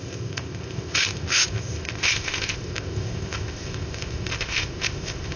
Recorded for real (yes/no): no